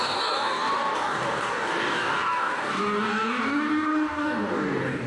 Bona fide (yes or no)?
no